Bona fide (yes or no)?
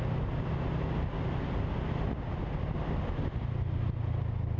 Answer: yes